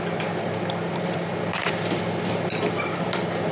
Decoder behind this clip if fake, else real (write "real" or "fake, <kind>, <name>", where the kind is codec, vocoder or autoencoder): real